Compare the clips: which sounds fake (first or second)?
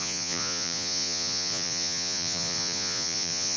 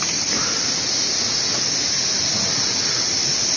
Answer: first